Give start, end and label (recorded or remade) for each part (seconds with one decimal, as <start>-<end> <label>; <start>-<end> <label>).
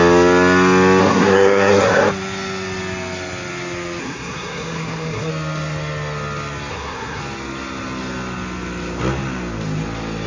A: 0.0-1.0 recorded; 1.0-2.1 remade; 2.1-4.0 recorded; 4.0-5.3 remade; 5.3-6.7 recorded; 6.7-7.2 remade; 7.2-10.3 recorded